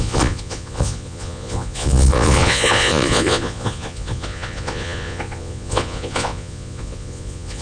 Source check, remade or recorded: remade